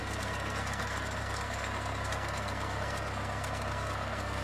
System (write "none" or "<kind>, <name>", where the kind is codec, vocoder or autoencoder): codec, SNAC